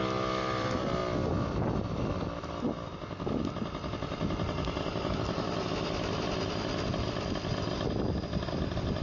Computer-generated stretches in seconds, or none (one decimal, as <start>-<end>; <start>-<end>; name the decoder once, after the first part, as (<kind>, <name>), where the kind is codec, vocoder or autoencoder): none